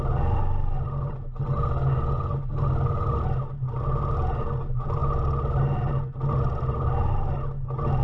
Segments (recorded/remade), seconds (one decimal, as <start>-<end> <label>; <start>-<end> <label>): 0.0-8.0 recorded